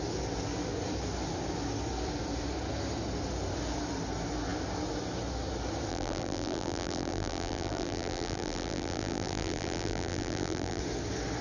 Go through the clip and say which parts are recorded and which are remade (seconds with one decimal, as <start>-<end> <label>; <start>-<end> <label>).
0.0-5.9 recorded; 5.9-10.8 remade; 10.8-11.4 recorded